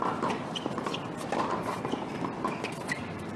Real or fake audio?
fake